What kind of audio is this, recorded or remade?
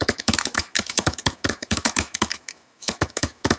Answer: remade